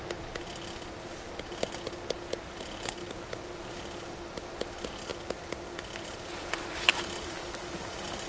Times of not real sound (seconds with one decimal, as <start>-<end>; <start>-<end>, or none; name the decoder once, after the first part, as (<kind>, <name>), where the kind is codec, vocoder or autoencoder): none